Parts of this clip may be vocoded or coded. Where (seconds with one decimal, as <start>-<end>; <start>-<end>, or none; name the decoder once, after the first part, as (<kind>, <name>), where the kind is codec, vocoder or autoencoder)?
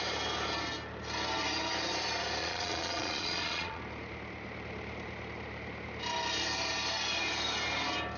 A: 2.4-3.8 (vocoder, Vocos)